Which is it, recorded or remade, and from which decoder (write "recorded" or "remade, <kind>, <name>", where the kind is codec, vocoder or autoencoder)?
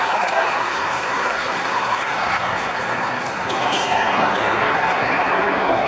remade, codec, SNAC